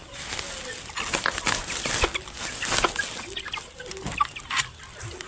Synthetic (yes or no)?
no